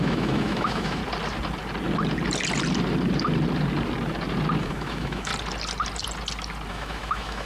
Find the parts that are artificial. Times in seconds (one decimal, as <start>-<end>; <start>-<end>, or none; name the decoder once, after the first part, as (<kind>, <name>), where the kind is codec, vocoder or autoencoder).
0.0-1.0 (autoencoder, DAC-VAE); 4.6-5.3; 6.7-7.5